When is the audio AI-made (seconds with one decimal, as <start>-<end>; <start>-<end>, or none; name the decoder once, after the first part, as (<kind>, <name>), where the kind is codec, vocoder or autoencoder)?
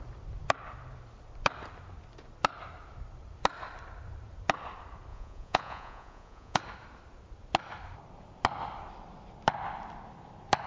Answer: 5.1-6.6 (vocoder, Vocos)